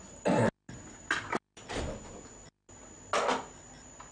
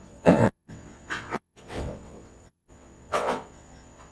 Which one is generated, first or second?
second